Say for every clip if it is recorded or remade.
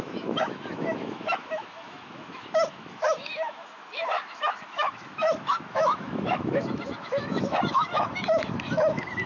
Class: remade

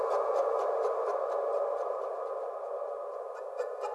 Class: recorded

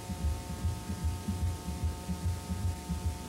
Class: recorded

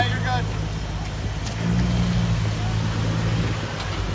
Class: recorded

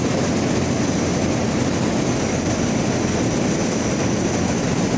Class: recorded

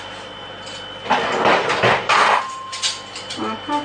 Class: recorded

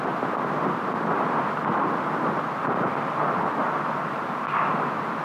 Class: recorded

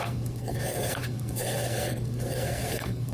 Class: remade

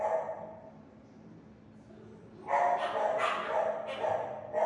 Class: recorded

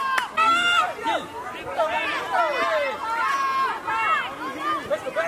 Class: recorded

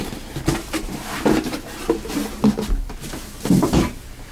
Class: recorded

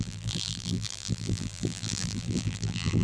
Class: remade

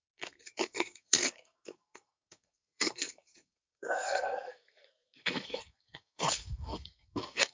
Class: remade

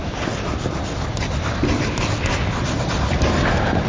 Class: recorded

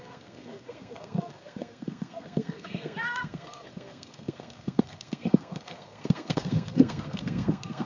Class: remade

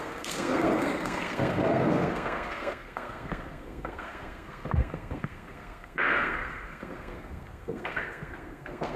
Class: remade